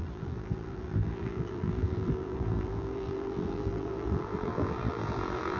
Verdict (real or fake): fake